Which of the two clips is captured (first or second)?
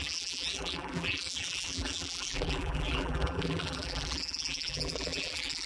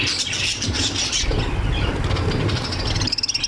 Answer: second